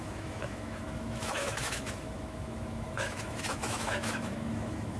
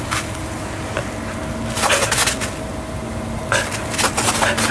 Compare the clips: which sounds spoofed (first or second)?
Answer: first